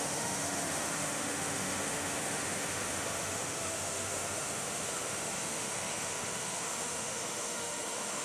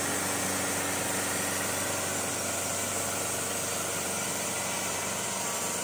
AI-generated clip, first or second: first